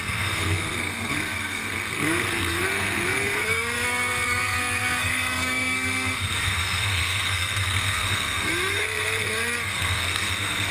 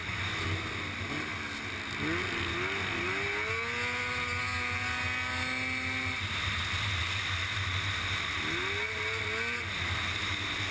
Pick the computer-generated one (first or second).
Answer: first